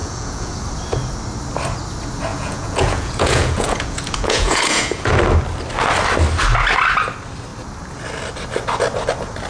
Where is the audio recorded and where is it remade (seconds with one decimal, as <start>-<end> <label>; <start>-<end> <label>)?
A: 0.0-0.5 remade; 0.5-2.3 recorded; 2.3-5.1 remade; 5.1-9.5 recorded